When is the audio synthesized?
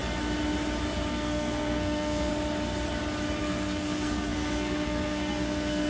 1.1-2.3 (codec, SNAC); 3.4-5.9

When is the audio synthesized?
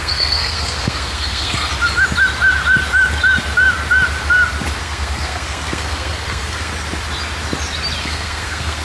0.0-1.7 (codec, SNAC); 4.8-6.7; 8.0-8.8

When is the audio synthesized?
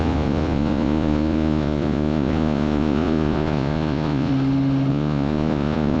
0.0-4.3 (vocoder, Vocos); 4.9-6.0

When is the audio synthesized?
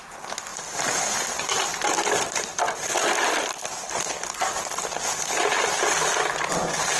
none